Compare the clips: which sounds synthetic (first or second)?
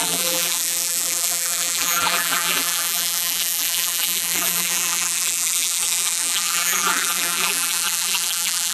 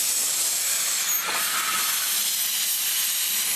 first